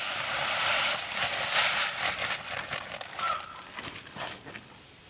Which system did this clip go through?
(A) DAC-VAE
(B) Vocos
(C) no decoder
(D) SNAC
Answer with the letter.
C